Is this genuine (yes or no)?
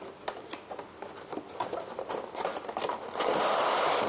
yes